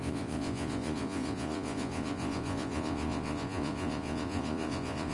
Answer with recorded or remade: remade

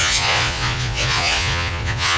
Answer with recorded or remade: remade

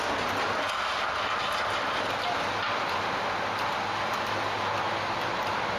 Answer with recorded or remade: recorded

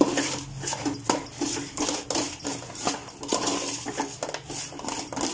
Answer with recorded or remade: recorded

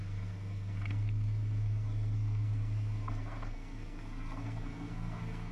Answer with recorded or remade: remade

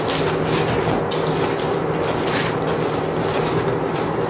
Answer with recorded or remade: recorded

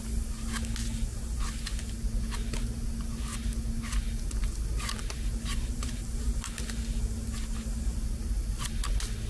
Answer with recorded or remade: recorded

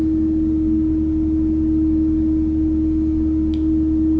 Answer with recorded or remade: recorded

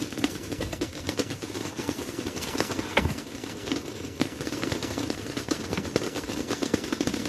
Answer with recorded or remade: remade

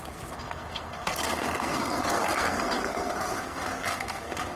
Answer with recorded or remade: remade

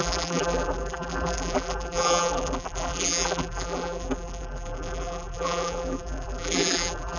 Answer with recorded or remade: remade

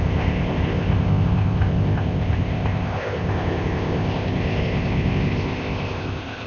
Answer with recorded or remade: remade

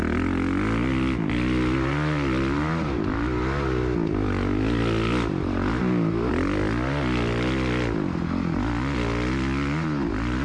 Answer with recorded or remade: recorded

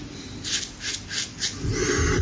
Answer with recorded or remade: recorded